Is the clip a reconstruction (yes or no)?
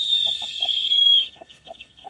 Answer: yes